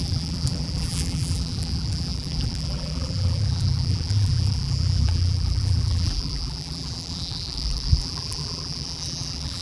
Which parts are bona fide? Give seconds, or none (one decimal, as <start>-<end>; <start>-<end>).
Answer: none

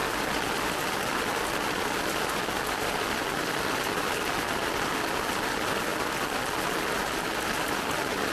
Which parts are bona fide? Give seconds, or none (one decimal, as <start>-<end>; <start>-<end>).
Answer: 0.0-8.3

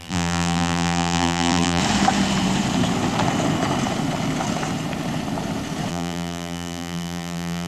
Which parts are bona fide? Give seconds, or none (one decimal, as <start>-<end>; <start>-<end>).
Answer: 1.8-5.9

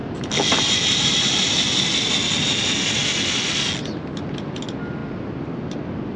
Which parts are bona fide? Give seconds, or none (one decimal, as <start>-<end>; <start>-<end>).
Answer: 0.0-6.2

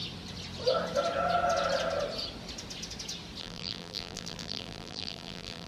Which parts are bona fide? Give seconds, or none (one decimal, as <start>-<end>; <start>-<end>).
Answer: 0.0-3.4

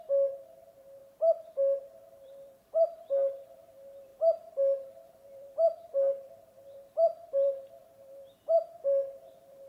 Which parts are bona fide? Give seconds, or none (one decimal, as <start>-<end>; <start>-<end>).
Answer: 1.0-1.8

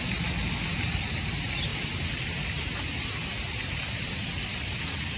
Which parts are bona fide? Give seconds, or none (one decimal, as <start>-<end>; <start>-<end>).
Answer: 0.0-1.7; 4.8-5.2